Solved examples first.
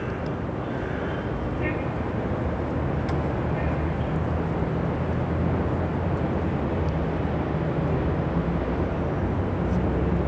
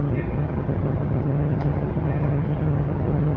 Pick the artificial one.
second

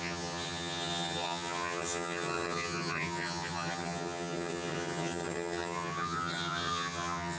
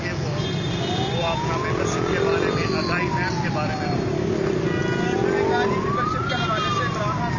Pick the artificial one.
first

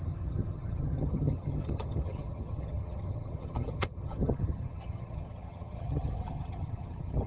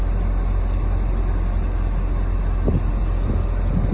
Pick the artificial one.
first